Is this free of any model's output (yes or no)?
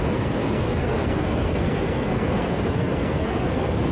no